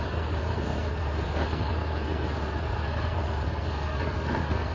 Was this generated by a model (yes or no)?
yes